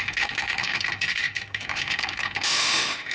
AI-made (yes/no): yes